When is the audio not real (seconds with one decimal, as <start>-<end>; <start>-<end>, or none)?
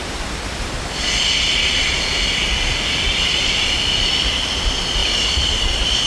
0.0-1.2; 5.0-6.1